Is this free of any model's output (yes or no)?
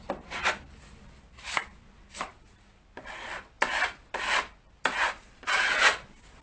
yes